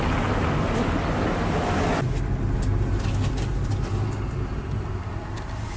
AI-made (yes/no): no